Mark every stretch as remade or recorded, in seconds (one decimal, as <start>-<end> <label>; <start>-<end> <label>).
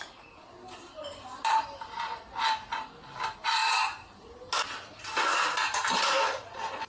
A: 0.0-6.9 recorded